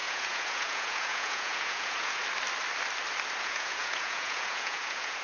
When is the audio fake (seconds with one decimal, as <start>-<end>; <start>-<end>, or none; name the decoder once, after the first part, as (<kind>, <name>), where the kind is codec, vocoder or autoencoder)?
0.0-2.2 (vocoder, Vocos); 3.4-5.2